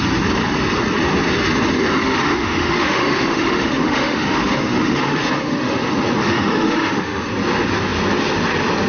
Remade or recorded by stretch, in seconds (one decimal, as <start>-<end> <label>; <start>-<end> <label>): 0.0-2.0 recorded; 2.0-5.8 remade; 5.8-6.2 recorded; 6.2-7.3 remade; 7.3-8.9 recorded

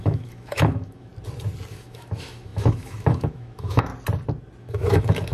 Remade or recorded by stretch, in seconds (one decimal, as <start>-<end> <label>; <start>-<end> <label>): 0.0-1.1 remade; 1.1-1.7 recorded; 1.7-3.9 remade; 3.9-4.6 recorded; 4.6-5.3 remade

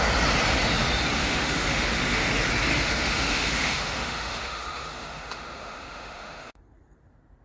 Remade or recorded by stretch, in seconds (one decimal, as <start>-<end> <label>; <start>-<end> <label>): 0.0-1.2 recorded; 1.2-2.3 remade; 2.3-2.7 recorded; 2.7-6.6 remade; 6.6-7.4 recorded

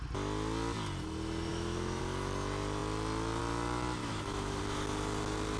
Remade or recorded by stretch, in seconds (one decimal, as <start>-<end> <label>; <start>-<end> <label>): 0.0-1.5 recorded; 1.5-2.0 remade; 2.0-4.0 recorded; 4.0-4.6 remade; 4.6-5.6 recorded

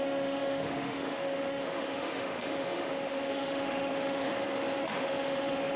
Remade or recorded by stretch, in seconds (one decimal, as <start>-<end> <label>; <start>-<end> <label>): 0.0-4.3 remade; 4.3-4.8 recorded; 4.8-5.8 remade

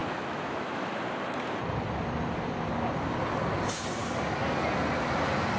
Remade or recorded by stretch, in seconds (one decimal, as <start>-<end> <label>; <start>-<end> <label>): 0.0-1.0 remade; 1.0-5.6 recorded

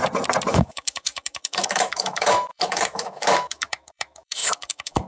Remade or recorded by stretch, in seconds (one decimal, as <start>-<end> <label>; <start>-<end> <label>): 0.0-0.5 recorded; 0.5-5.1 remade

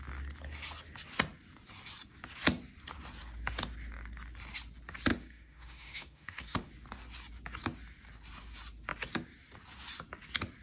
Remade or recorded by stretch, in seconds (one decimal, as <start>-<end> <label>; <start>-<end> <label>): 0.0-5.1 recorded; 5.1-6.7 remade; 6.7-10.6 recorded